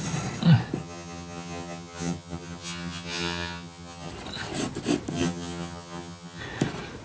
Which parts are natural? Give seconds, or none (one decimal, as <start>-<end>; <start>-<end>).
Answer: 0.0-0.8; 4.1-5.1; 6.4-7.0